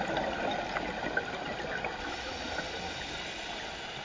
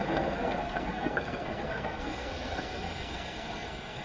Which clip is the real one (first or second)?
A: first